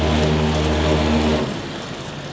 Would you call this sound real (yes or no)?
yes